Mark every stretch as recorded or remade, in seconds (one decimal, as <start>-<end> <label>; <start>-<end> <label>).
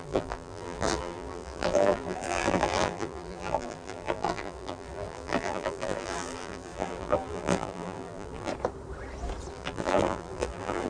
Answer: 0.0-8.5 remade; 8.5-9.5 recorded; 9.5-10.9 remade